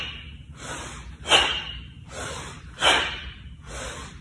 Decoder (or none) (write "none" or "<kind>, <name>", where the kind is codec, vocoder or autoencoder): none